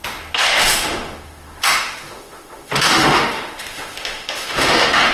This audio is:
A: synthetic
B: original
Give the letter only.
A